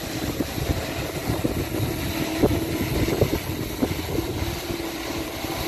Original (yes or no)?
yes